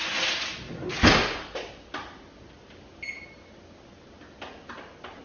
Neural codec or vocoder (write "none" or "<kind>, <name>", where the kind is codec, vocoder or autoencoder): none